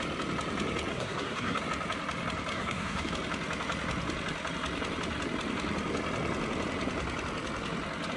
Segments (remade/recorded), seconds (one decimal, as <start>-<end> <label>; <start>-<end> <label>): 0.0-0.9 recorded; 0.9-1.6 remade; 1.6-2.5 recorded; 2.5-3.1 remade; 3.1-8.2 recorded